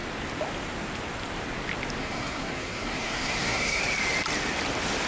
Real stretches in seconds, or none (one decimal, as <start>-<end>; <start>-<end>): 0.0-2.0; 3.8-5.1

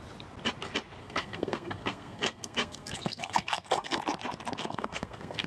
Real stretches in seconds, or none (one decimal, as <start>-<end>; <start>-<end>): 0.0-1.0; 4.0-4.6